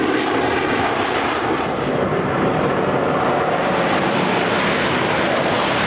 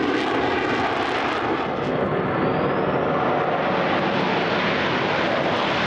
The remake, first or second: first